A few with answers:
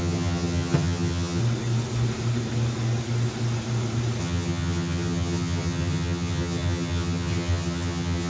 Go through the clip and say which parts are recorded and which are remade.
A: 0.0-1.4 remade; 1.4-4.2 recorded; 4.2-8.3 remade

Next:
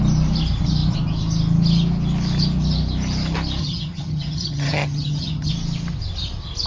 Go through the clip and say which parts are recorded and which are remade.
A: 0.0-3.6 recorded; 3.6-5.5 remade; 5.5-6.7 recorded

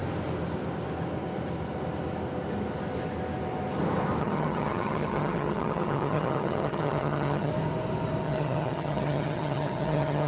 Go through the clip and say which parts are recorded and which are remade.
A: 0.0-4.2 recorded; 4.2-7.5 remade; 7.5-8.2 recorded; 8.2-10.3 remade

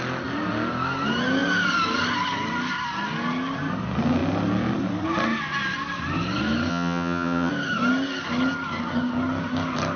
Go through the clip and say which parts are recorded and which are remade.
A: 0.0-6.7 recorded; 6.7-7.5 remade; 7.5-10.0 recorded

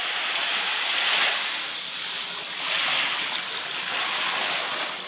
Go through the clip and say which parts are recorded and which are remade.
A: 0.0-5.1 recorded

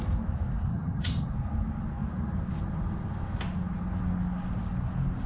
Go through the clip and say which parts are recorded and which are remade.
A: 0.0-0.7 recorded; 0.7-1.3 remade; 1.3-5.3 recorded